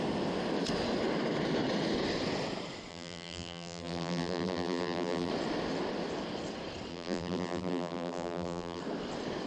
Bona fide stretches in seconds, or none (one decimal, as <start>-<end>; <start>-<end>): 0.0-2.9; 5.3-6.9; 8.8-9.5